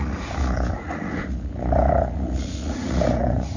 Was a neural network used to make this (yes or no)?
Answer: yes